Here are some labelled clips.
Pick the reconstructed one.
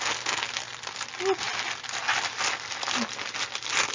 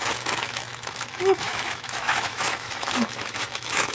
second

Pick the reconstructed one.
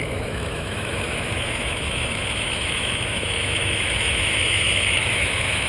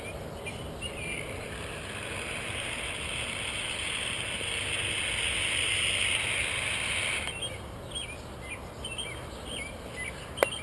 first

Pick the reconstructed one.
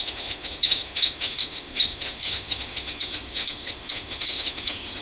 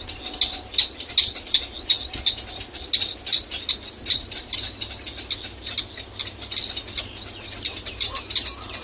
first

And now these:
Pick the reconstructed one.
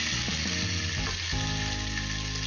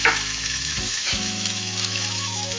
second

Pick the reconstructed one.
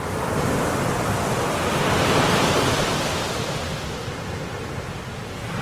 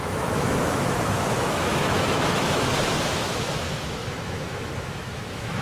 second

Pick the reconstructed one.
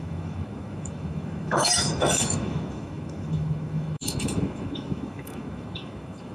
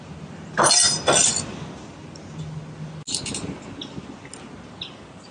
first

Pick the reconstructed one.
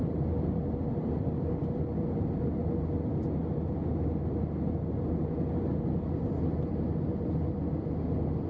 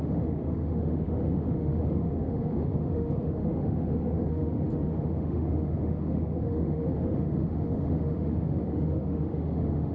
second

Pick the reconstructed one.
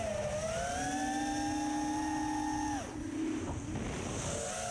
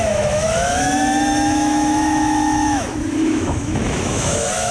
second